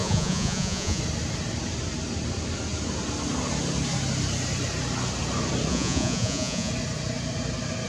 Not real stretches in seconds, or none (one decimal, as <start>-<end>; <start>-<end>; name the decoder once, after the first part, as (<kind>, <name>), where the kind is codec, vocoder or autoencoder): 0.0-1.0 (vocoder, Vocos); 5.7-6.7